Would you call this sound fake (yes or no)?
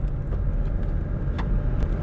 no